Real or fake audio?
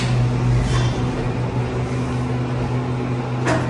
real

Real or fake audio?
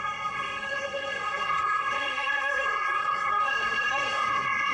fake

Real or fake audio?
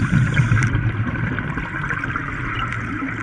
real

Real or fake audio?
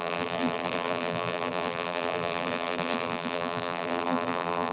fake